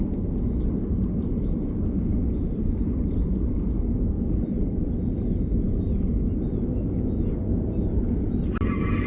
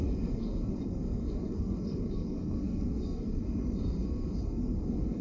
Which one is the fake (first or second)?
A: second